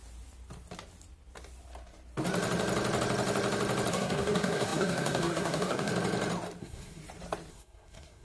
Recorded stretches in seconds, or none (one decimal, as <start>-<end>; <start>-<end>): 0.0-3.9; 5.9-6.6; 7.0-7.5